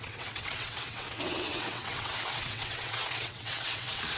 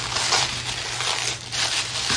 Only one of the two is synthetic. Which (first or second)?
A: first